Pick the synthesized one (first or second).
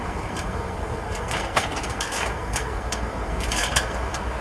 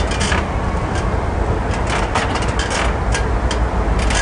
first